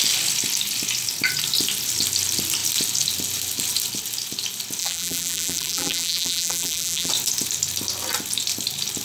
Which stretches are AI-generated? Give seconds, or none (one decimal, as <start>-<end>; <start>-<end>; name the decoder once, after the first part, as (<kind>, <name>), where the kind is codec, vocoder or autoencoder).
4.8-7.1 (vocoder, BigVGAN v2)